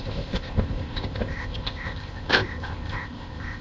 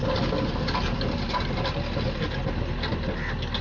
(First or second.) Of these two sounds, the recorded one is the second